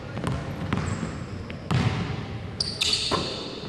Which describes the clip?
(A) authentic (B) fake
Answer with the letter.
A